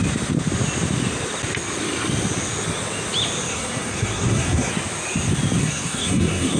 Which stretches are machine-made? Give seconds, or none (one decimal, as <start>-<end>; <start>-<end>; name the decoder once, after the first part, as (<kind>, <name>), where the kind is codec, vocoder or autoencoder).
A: 3.5-4.7 (codec, SNAC); 5.6-6.6